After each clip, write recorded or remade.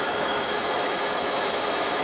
remade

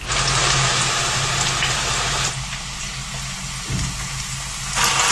recorded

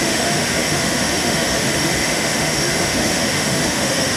remade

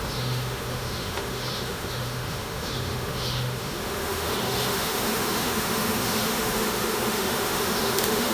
remade